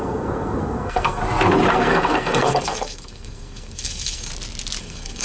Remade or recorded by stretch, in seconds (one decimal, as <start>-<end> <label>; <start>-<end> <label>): 0.0-1.2 remade; 1.2-1.7 recorded; 1.7-4.3 remade; 4.3-4.8 recorded; 4.8-5.2 remade